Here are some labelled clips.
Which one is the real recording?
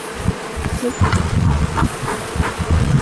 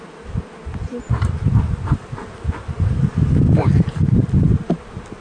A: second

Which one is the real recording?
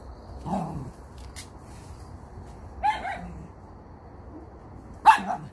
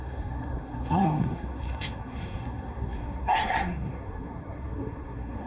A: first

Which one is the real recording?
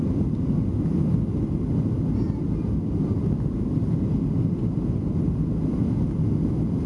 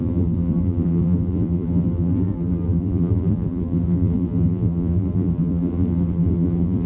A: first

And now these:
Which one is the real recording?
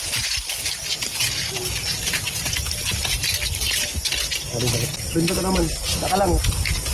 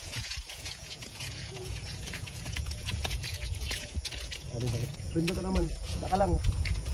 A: first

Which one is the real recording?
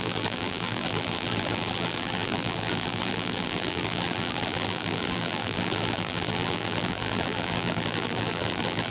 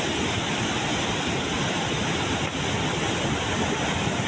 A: second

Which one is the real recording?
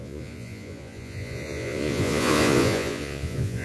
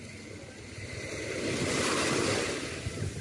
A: second